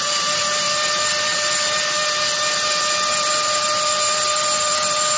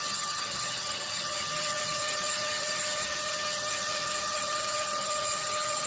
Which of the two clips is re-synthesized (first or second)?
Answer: second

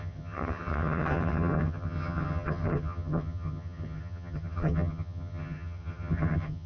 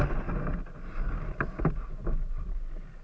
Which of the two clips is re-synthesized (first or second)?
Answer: first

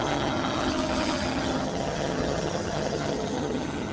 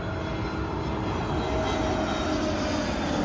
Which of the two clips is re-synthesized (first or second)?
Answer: first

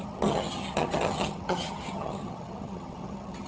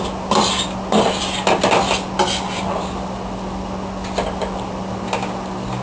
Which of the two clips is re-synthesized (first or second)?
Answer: first